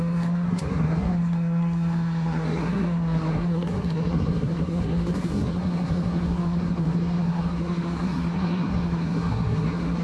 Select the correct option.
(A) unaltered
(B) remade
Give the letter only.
B